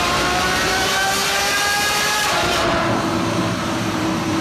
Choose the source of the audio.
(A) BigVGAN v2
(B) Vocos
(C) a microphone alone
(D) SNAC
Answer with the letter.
A